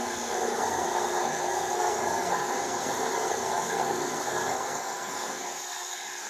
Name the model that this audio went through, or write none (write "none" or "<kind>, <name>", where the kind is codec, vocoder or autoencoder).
codec, SNAC